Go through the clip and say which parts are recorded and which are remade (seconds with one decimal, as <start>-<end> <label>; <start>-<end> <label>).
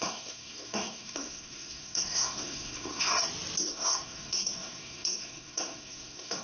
0.0-3.1 remade; 3.1-3.6 recorded; 3.6-6.4 remade